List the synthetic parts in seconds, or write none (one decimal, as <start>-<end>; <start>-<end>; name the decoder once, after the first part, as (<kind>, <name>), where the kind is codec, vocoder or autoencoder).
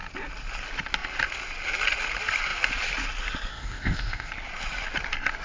3.5-4.3 (codec, ZipCodec)